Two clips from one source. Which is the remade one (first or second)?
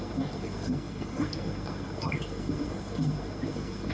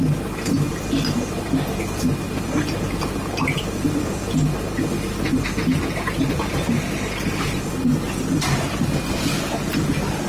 first